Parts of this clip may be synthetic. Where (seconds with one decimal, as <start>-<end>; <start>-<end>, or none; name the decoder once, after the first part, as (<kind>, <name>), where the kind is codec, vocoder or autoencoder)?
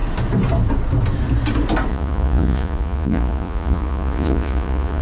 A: 1.9-5.0 (vocoder, Vocos)